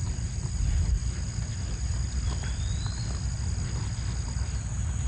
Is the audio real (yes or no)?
yes